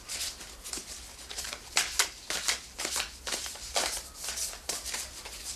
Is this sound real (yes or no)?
yes